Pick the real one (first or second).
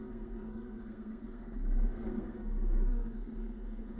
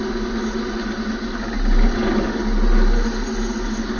second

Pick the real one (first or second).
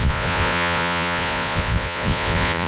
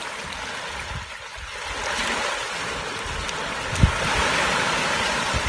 second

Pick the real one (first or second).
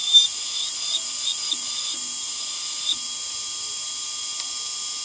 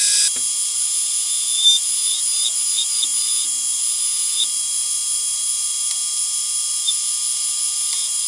second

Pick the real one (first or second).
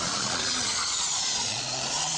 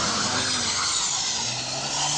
second